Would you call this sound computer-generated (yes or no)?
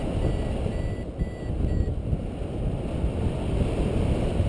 no